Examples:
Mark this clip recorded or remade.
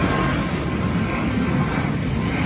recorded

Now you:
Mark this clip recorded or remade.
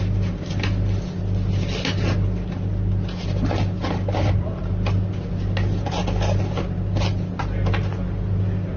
recorded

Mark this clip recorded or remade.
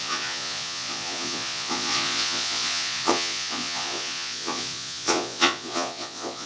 remade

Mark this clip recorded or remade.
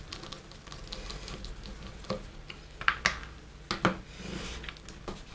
recorded